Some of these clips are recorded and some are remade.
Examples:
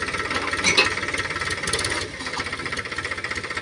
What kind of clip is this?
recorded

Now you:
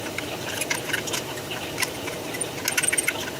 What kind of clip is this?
recorded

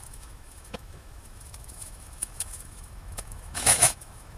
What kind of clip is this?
remade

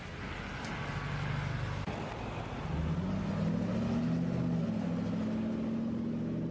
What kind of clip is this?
recorded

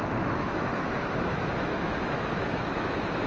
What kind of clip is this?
remade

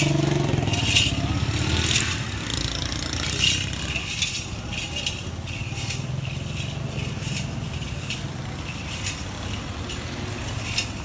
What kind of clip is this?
recorded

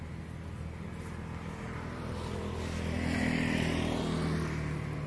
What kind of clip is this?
recorded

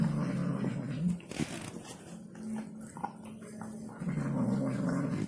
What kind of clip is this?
recorded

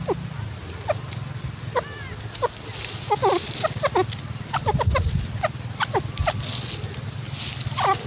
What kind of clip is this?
recorded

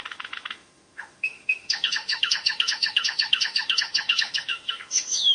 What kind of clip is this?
remade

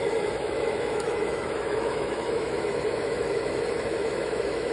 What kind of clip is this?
remade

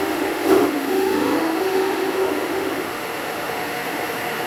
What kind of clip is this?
remade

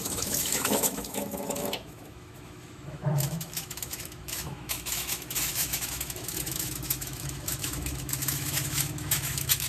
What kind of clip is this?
remade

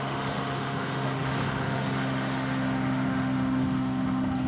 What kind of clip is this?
remade